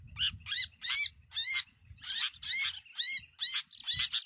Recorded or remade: recorded